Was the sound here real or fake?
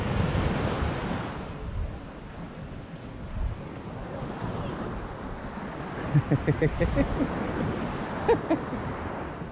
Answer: real